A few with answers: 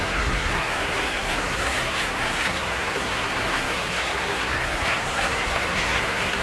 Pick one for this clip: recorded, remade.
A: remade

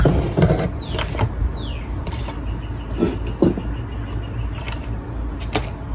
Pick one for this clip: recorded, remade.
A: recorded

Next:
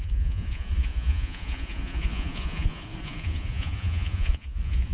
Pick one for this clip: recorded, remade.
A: remade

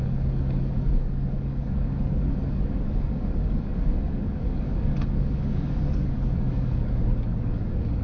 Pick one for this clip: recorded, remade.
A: remade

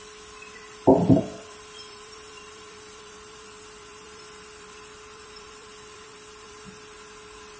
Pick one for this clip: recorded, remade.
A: remade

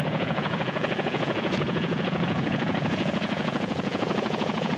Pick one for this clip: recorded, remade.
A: remade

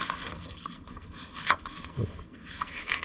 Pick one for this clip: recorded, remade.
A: remade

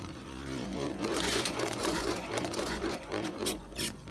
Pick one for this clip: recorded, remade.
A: remade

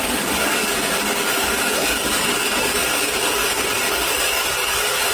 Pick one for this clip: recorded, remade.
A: remade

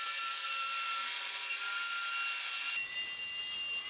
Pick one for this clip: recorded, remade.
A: recorded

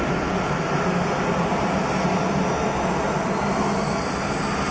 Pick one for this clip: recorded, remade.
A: recorded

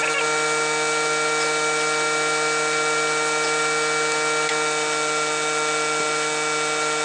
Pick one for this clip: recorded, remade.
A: recorded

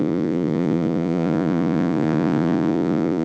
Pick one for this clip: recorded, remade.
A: remade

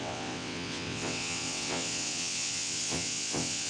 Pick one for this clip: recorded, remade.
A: remade